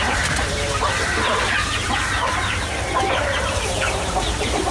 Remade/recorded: remade